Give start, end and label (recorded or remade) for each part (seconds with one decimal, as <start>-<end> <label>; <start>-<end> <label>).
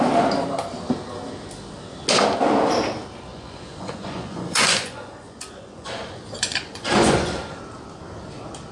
0.0-3.3 recorded; 3.3-7.6 remade; 7.6-8.7 recorded